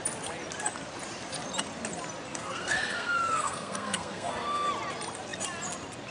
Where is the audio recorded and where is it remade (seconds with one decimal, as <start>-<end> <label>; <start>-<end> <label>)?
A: 0.0-2.3 recorded; 2.3-4.7 remade; 4.7-6.1 recorded